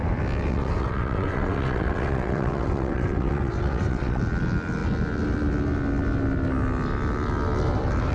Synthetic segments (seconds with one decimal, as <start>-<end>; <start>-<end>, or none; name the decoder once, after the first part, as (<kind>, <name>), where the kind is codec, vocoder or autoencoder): 0.5-4.2 (vocoder, WaveNeXt)